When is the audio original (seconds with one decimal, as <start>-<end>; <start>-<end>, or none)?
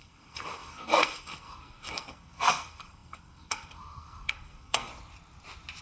4.9-5.8